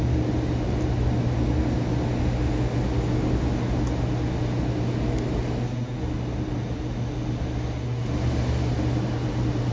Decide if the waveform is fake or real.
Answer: real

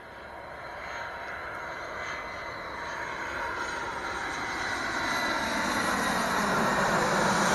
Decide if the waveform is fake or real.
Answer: real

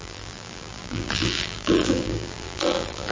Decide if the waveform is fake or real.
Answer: fake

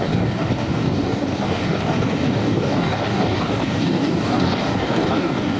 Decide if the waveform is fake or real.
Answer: fake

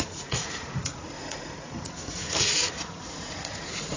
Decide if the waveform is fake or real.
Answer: fake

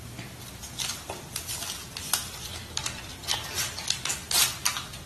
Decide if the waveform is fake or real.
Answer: real